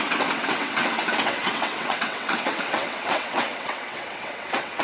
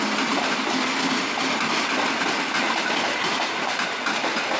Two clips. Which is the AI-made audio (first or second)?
first